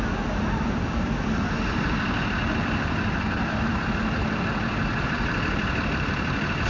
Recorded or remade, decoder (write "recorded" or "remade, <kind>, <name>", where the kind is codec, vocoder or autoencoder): remade, vocoder, BigVGAN v2